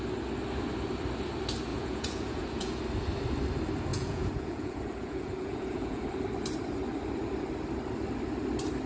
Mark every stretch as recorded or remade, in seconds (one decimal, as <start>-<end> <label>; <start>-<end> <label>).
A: 0.0-1.7 recorded; 1.7-2.8 remade; 2.8-3.9 recorded; 3.9-6.0 remade; 6.0-8.9 recorded